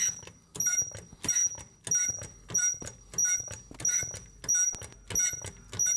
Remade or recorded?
recorded